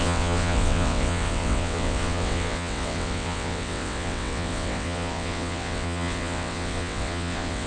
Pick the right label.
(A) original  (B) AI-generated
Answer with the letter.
B